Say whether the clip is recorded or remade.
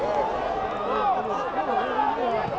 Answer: recorded